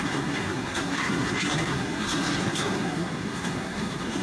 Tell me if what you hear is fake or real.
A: fake